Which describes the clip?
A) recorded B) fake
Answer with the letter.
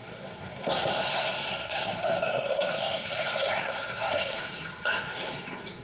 B